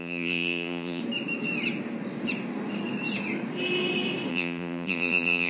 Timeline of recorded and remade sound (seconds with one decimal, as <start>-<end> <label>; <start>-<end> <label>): 0.0-1.0 remade; 1.0-4.3 recorded; 4.3-5.5 remade